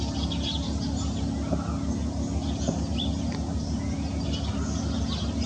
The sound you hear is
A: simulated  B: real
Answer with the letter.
B